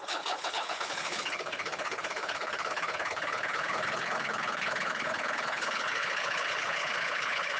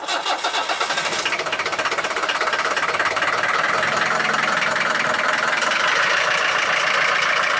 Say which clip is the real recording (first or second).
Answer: second